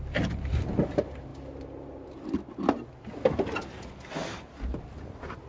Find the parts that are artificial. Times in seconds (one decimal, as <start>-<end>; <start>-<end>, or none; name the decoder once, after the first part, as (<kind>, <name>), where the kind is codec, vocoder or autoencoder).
none